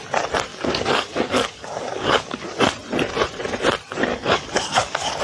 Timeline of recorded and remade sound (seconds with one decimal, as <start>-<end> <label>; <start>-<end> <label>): 0.0-0.5 recorded; 0.5-2.6 remade; 2.6-4.1 recorded; 4.1-5.2 remade